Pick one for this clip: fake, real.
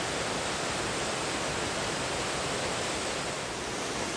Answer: real